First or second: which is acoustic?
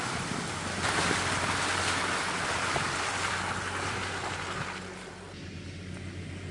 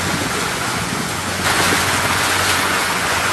first